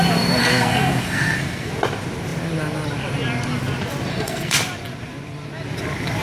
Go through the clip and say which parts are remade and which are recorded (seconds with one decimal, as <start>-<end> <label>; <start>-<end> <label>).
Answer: 0.0-0.4 recorded; 0.4-1.7 remade; 1.7-4.1 recorded; 4.1-4.6 remade; 4.6-6.2 recorded